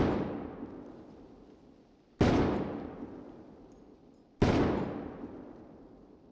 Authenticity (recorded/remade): recorded